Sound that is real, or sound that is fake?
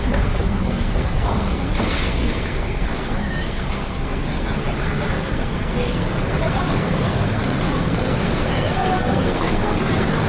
fake